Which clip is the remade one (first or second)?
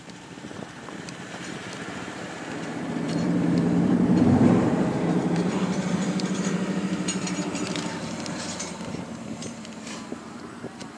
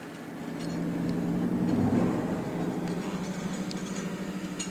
first